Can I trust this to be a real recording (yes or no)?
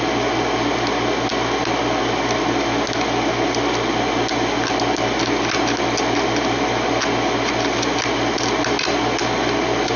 yes